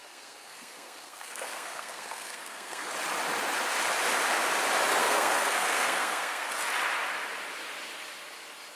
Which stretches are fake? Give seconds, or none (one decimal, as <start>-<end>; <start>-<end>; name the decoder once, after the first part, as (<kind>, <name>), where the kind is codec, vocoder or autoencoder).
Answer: 0.0-2.9 (codec, SNAC); 5.0-6.5